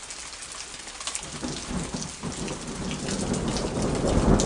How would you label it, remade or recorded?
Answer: recorded